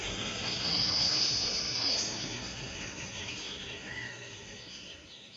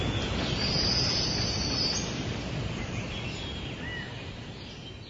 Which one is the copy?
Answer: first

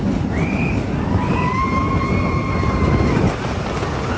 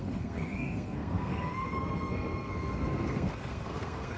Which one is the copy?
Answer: second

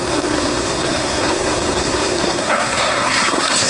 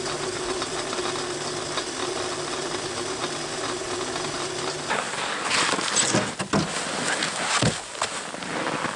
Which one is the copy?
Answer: first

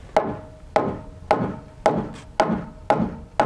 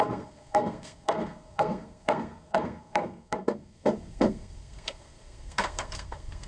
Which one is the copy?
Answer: second